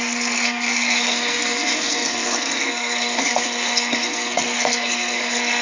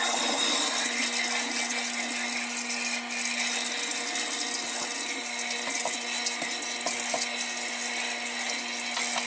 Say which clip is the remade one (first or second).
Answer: first